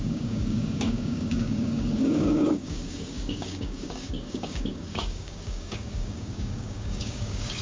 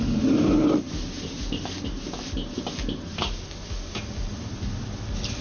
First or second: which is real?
second